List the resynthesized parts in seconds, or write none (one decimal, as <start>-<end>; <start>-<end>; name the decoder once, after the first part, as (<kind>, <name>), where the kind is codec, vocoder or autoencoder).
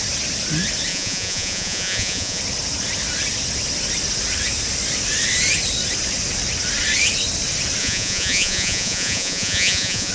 0.9-2.4 (vocoder, Vocos); 7.8-10.1